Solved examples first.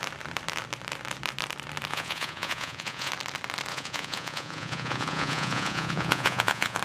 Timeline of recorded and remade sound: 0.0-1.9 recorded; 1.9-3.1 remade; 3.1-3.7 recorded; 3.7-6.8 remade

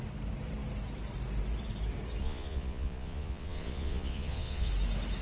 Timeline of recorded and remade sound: 0.0-2.2 recorded; 2.2-4.7 remade; 4.7-5.2 recorded

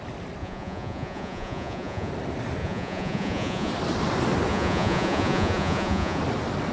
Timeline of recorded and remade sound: 0.0-0.4 recorded; 0.4-2.1 remade; 2.1-2.6 recorded; 2.6-3.7 remade; 3.7-4.5 recorded; 4.5-6.2 remade; 6.2-6.7 recorded

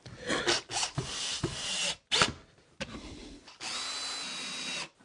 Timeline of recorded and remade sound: 0.0-5.0 recorded

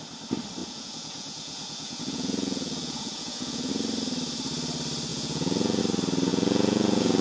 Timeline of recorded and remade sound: 0.0-0.6 recorded; 0.6-3.7 remade; 3.7-5.1 recorded; 5.1-5.8 remade; 5.8-6.3 recorded; 6.3-7.2 remade